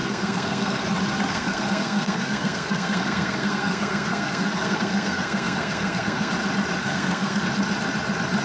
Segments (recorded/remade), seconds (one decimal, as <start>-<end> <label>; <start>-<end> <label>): 0.0-0.8 remade; 0.8-1.3 recorded; 1.3-6.3 remade; 6.3-6.8 recorded; 6.8-7.4 remade; 7.4-8.4 recorded